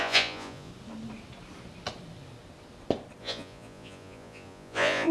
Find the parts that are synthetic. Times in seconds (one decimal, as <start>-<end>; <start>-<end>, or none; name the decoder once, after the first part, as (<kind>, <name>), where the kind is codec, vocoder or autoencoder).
0.0-0.7 (vocoder, Vocos); 3.2-5.1